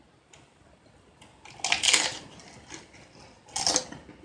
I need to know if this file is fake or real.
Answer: real